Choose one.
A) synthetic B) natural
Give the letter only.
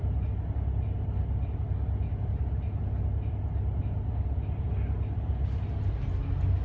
B